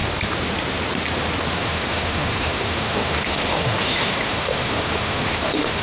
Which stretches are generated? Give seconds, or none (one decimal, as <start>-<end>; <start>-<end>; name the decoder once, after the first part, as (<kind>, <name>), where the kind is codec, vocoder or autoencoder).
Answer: 1.6-5.8 (autoencoder, DAC-VAE)